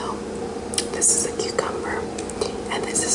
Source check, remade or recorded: recorded